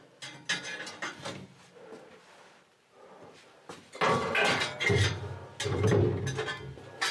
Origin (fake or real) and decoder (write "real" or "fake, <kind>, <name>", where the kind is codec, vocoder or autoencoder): real